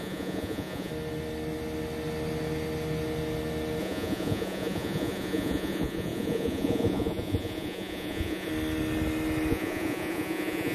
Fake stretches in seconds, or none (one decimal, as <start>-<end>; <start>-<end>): 0.0-0.9; 3.8-8.5; 9.5-10.7

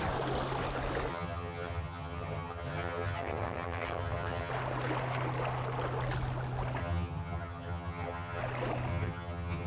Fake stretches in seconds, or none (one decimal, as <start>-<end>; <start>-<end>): 1.1-4.5; 6.8-8.4; 8.9-9.7

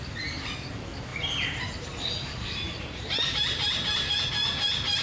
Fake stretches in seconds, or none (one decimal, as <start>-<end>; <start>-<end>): 1.1-4.1

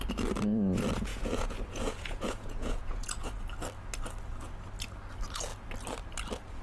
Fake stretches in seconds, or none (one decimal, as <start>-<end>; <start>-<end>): 1.1-3.3

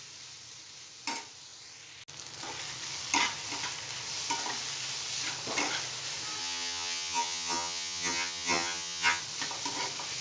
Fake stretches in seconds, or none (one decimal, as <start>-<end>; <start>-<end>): 6.4-9.2

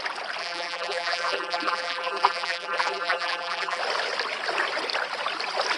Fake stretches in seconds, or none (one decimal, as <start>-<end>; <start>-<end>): 0.4-3.8

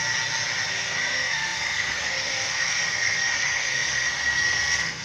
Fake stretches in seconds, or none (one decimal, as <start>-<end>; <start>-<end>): 0.7-5.0

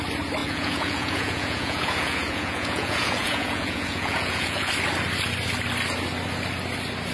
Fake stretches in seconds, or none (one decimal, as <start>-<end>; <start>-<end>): 0.4-4.7